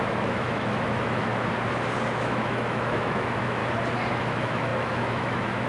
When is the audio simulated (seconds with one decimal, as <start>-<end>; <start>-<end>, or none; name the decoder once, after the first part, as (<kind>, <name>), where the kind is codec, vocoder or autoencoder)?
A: 0.0-1.3 (autoencoder, DAC-VAE); 2.0-3.6; 4.1-5.7